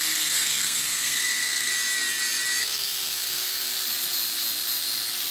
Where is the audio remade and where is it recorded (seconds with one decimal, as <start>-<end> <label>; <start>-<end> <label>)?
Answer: 0.0-1.7 remade; 1.7-2.6 recorded; 2.6-3.7 remade; 3.7-5.3 recorded